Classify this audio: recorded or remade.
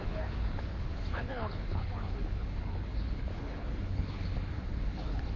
remade